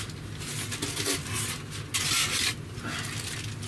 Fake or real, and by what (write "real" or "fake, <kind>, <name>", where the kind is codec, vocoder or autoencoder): real